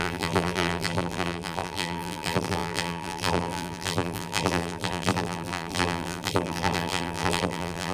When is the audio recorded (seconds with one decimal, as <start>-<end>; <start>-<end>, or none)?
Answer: none